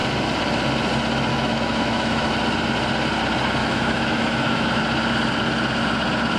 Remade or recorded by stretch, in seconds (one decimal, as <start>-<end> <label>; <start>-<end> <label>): 0.0-1.3 recorded; 1.3-2.3 remade; 2.3-3.6 recorded; 3.6-4.8 remade; 4.8-6.4 recorded